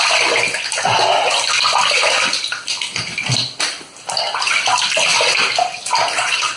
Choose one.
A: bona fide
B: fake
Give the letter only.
A